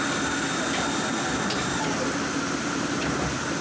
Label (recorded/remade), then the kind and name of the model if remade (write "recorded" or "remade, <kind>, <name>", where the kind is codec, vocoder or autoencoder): recorded